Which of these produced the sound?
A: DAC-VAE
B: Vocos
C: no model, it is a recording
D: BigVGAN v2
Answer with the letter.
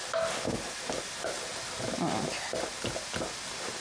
C